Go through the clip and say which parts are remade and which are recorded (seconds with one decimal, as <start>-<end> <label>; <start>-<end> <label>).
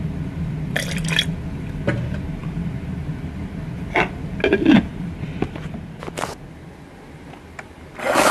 0.0-8.3 recorded